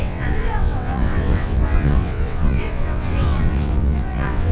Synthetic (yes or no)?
yes